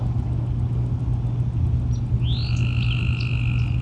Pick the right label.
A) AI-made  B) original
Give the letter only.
B